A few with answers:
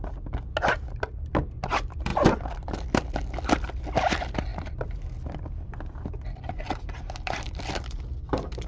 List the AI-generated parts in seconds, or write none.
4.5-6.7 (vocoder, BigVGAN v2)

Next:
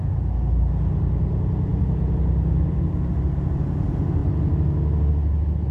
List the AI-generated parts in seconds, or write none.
none